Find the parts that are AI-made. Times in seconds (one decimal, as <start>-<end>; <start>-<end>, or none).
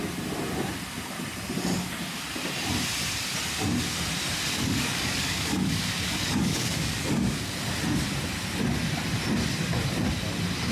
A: 4.5-7.5